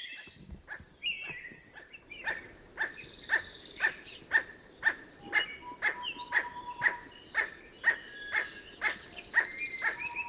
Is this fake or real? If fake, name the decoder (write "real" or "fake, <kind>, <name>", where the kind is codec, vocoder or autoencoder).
real